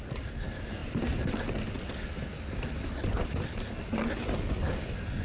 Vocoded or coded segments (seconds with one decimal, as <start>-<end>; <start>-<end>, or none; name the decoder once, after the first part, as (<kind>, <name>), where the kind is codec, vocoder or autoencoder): none